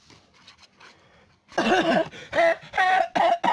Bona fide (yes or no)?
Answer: yes